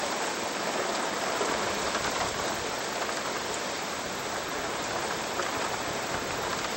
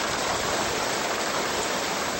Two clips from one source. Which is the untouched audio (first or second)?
second